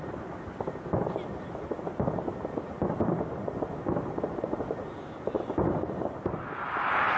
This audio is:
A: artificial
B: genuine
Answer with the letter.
B